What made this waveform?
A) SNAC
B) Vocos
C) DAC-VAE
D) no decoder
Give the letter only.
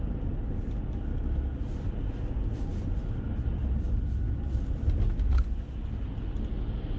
D